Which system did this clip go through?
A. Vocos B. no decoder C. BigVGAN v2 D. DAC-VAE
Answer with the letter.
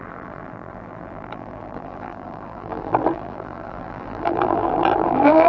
C